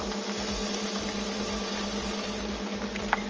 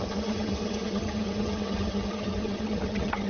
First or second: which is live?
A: first